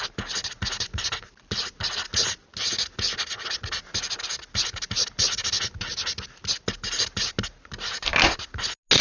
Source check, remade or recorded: recorded